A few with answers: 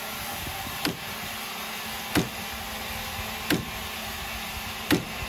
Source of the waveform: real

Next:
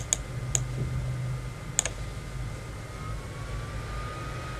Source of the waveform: real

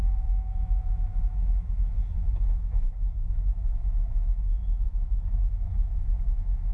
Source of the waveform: fake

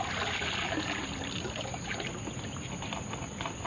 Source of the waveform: real